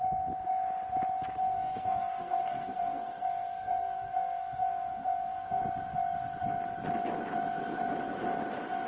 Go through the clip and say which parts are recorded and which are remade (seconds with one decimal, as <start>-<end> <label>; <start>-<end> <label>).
0.0-1.4 recorded; 1.4-5.6 remade; 5.6-8.9 recorded